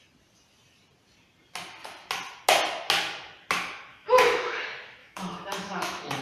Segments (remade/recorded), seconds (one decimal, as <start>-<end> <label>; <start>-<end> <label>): 0.0-3.9 recorded; 3.9-4.6 remade; 4.6-5.0 recorded; 5.0-6.2 remade